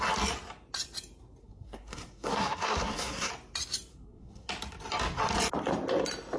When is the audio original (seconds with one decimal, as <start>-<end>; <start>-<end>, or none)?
0.0-1.4; 3.3-3.9; 4.5-6.4

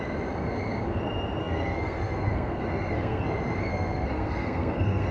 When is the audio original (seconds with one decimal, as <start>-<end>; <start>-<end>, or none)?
0.0-1.4; 3.2-3.7

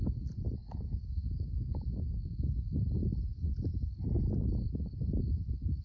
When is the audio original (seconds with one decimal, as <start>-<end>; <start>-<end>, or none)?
0.0-0.6; 2.3-5.8

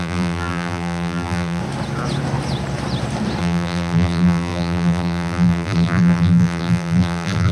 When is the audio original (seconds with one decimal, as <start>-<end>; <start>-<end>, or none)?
1.6-3.4

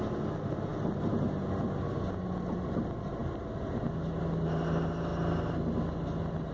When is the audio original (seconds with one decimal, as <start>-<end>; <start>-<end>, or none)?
0.0-6.5

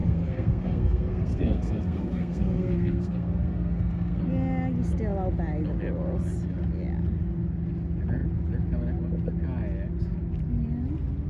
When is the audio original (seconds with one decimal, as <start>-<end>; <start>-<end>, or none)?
4.2-11.3